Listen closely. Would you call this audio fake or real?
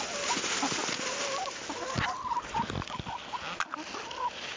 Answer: real